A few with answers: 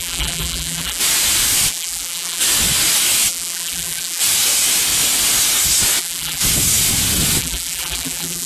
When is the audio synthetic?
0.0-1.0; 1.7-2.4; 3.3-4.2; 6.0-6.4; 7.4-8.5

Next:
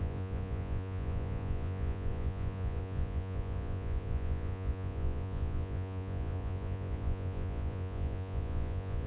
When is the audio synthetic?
0.0-9.1

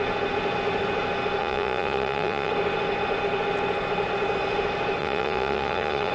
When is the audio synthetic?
1.4-2.5; 5.0-6.1